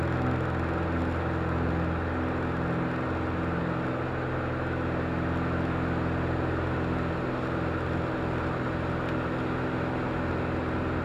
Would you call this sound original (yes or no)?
yes